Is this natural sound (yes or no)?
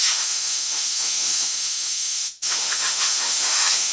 no